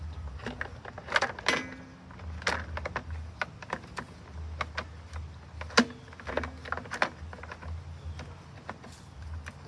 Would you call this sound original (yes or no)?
yes